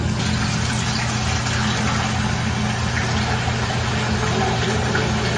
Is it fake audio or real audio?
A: real